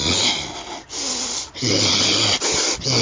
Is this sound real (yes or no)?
yes